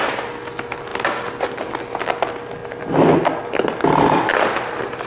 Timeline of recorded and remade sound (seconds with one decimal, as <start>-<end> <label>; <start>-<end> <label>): 0.0-5.1 recorded